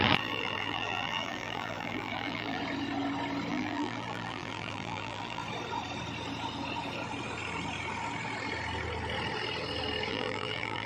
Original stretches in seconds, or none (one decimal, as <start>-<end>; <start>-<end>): 2.6-3.5; 5.4-10.1